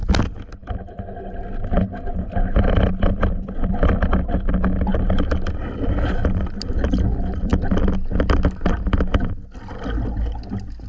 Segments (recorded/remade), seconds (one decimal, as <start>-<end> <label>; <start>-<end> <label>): 0.0-10.9 recorded